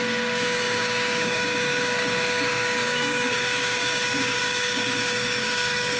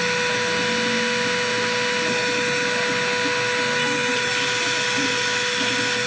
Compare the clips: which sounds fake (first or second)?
first